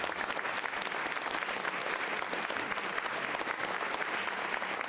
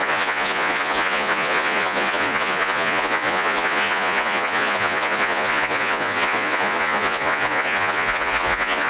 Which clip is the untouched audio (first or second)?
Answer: first